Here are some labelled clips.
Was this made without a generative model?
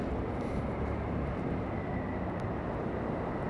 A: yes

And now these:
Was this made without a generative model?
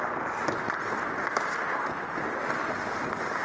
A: yes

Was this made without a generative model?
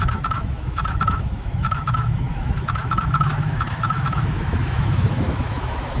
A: no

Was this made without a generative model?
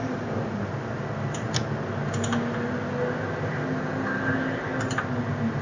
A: yes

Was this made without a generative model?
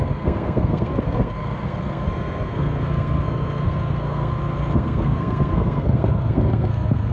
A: no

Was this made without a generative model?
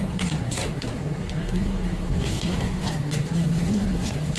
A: no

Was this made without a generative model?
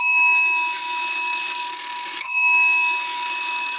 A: no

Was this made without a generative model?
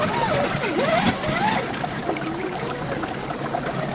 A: yes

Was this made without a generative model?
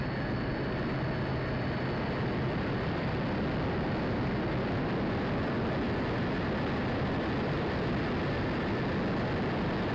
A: yes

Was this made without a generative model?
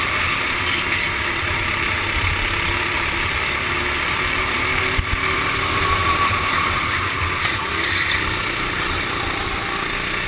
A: no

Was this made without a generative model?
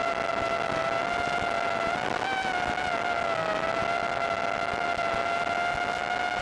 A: yes